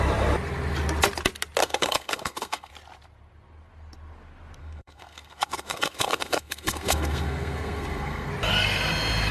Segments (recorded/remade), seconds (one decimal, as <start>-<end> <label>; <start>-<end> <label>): 0.0-1.6 recorded; 1.6-2.7 remade; 2.7-4.6 recorded; 4.6-8.3 remade; 8.3-9.3 recorded